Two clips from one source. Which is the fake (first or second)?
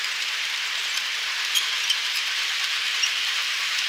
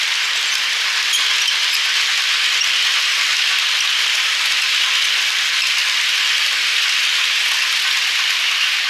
first